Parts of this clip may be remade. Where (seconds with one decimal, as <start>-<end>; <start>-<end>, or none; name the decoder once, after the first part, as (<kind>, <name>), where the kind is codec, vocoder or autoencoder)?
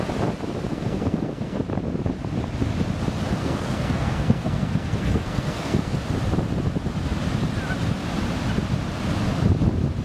0.7-1.6 (codec, SNAC); 3.4-6.0